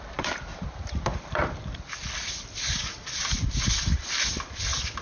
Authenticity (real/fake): fake